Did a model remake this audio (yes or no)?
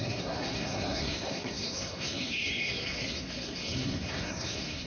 yes